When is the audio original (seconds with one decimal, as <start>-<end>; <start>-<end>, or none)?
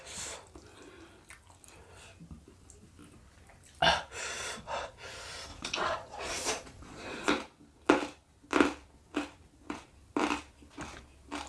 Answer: 0.0-4.2; 4.9-5.5; 7.3-11.5